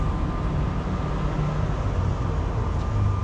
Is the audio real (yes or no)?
yes